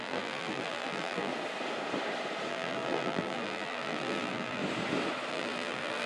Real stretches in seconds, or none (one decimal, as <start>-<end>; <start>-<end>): 1.3-2.5; 4.6-5.3

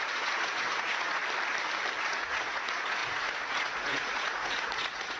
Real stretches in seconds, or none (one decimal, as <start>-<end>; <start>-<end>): 1.2-2.1

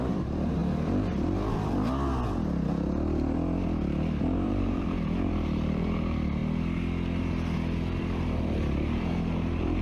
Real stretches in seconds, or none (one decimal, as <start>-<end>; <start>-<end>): 0.6-4.2; 6.4-8.0

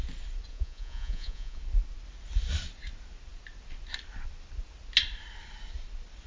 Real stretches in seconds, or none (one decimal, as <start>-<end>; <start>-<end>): 0.0-0.5; 1.6-6.3

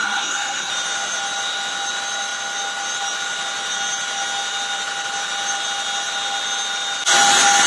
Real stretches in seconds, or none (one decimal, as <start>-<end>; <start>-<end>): 0.7-7.7

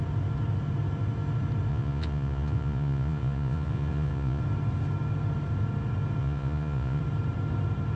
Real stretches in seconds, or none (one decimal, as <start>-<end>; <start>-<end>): 0.0-1.7; 4.4-6.2; 7.0-8.0